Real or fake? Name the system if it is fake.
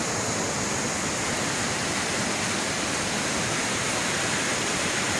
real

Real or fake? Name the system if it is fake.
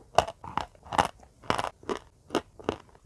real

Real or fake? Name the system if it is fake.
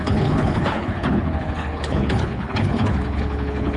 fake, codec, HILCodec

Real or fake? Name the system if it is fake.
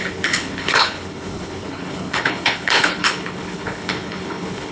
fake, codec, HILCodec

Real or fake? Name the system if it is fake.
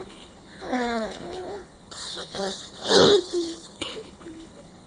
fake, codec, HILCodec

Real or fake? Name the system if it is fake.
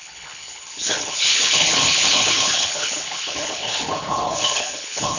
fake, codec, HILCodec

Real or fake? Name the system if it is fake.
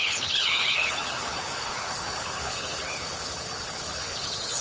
fake, codec, HILCodec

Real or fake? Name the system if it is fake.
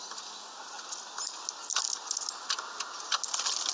real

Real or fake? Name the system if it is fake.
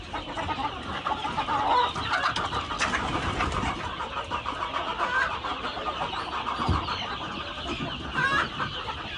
real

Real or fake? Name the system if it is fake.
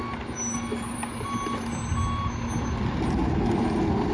real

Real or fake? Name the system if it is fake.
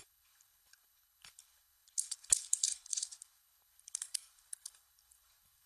fake, codec, HILCodec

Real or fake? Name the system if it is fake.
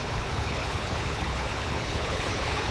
fake, codec, HILCodec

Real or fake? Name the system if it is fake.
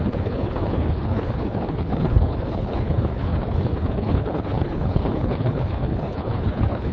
fake, codec, HILCodec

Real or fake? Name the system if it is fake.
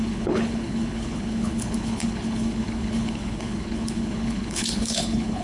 fake, codec, HILCodec